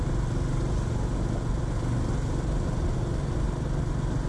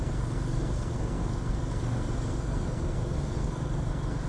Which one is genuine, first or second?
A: first